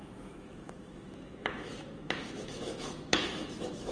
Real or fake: fake